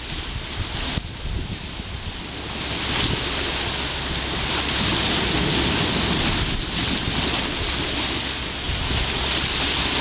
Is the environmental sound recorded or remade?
recorded